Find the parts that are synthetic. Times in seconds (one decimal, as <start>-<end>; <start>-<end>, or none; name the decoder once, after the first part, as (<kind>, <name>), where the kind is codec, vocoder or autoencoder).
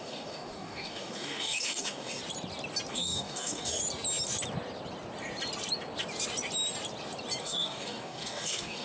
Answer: 0.0-2.2 (codec, DAC); 2.9-3.8; 7.4-8.8